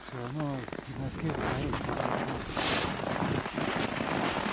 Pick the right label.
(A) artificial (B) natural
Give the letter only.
B